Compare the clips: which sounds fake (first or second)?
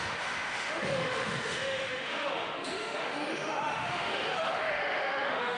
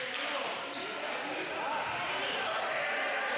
first